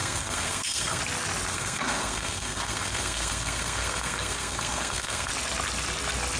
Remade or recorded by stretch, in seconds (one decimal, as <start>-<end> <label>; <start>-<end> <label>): 0.0-1.0 remade; 1.0-1.5 recorded; 1.5-5.3 remade; 5.3-6.4 recorded